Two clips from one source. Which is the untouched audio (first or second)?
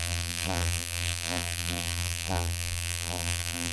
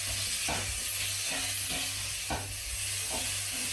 second